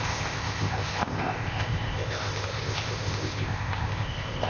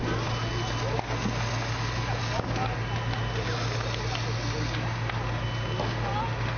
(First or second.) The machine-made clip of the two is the first